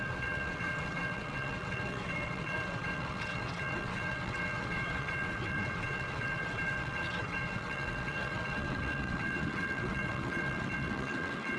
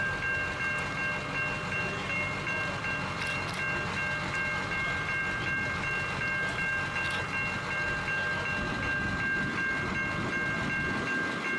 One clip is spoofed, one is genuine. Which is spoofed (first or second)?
first